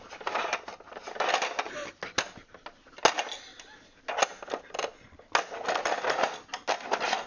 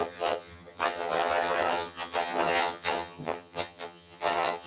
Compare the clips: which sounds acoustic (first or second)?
first